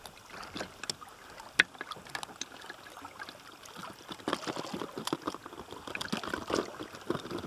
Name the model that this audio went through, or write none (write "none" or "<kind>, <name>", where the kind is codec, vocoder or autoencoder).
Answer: none